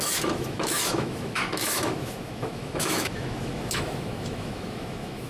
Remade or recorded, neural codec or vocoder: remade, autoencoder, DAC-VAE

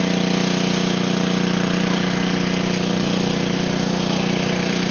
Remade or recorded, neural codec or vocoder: recorded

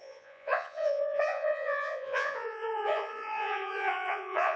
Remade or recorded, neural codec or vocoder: remade, vocoder, Vocos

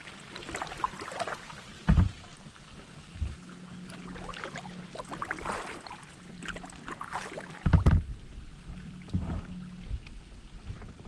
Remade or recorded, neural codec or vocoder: recorded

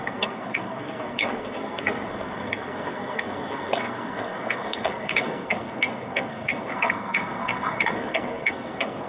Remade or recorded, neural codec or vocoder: remade, codec, SNAC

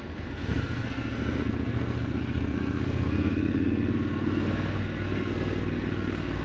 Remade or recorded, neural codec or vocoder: remade, codec, SNAC